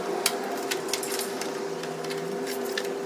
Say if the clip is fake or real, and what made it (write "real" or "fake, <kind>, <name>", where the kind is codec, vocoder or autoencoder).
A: real